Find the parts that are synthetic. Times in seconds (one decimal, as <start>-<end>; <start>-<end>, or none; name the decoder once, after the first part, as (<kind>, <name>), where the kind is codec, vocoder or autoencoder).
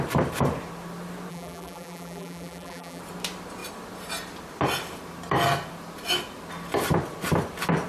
1.3-3.0 (vocoder, BigVGAN v2)